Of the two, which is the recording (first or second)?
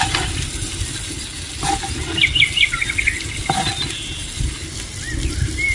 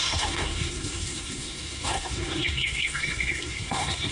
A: first